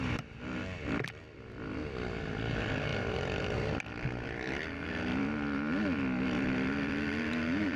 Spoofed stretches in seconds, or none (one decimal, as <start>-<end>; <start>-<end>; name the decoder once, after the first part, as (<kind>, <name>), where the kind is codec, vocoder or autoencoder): none